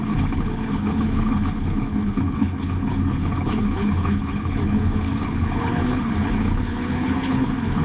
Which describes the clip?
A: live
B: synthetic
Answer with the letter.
B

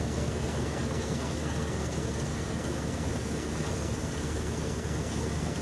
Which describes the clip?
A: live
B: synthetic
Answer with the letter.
B